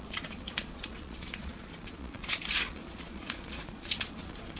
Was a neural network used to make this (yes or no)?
yes